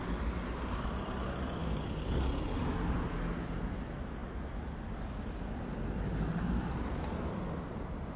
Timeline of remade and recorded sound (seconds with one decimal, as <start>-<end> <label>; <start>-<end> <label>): 0.0-8.2 recorded